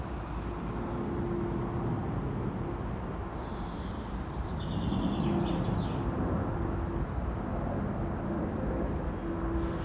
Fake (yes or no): no